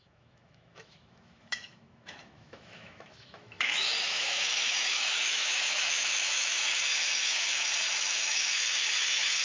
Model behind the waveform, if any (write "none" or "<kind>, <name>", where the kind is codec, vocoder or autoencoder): autoencoder, DAC-VAE